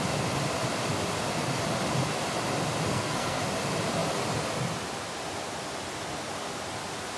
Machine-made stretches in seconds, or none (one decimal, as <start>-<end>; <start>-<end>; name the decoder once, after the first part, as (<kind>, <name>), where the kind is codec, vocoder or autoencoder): 2.9-3.4 (codec, SNAC)